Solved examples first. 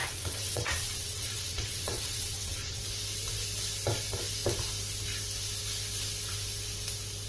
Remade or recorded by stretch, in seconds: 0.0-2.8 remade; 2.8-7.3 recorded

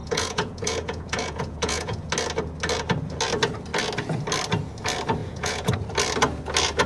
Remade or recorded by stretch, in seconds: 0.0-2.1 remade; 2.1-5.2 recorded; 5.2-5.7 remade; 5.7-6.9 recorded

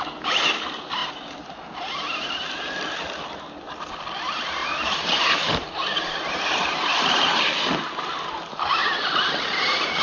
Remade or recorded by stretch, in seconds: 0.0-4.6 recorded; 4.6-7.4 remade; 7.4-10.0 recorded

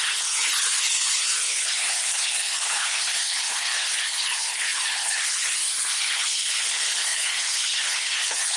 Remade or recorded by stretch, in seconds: 0.0-8.6 remade

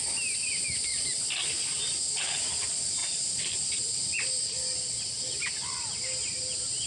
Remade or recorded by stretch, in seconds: 0.0-6.9 recorded